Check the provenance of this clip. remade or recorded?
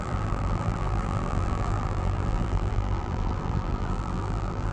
remade